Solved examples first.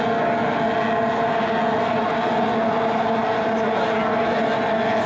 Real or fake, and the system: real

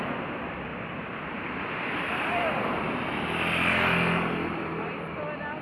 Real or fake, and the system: real